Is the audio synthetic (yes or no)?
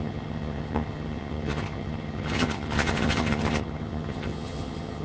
yes